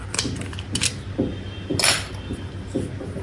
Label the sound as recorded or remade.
recorded